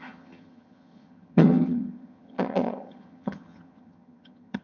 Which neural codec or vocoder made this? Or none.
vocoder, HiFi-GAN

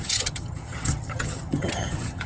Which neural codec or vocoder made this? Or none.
vocoder, HiFi-GAN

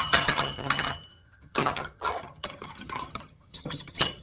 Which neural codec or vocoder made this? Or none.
vocoder, HiFi-GAN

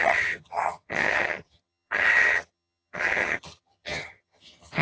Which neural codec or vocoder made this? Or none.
vocoder, HiFi-GAN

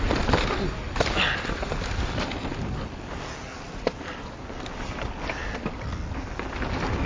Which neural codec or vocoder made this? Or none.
none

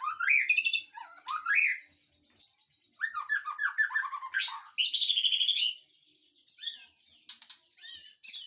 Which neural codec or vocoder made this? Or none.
none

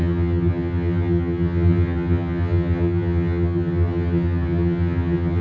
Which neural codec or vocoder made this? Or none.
vocoder, HiFi-GAN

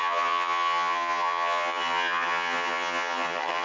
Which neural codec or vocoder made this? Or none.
vocoder, HiFi-GAN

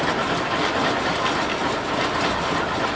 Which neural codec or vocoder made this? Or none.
none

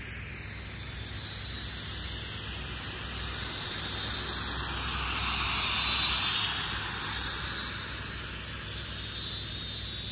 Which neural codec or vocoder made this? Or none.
none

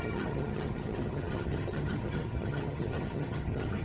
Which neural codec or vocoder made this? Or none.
vocoder, HiFi-GAN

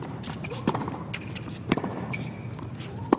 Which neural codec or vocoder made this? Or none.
none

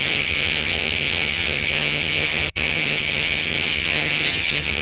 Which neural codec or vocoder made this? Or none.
vocoder, HiFi-GAN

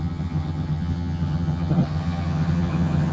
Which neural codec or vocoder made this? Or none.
vocoder, HiFi-GAN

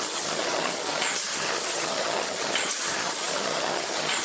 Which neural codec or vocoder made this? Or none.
vocoder, HiFi-GAN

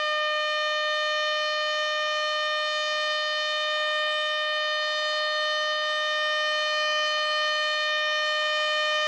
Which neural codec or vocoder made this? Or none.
none